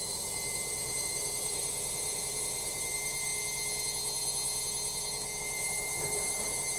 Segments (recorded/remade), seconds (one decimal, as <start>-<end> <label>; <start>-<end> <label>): 0.0-3.3 remade; 3.3-5.4 recorded; 5.4-6.8 remade